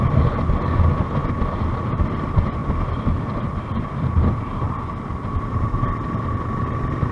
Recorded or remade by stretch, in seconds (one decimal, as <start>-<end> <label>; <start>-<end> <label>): 0.0-7.1 recorded